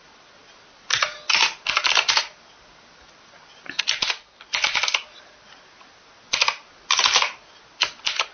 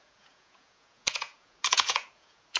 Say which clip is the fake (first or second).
second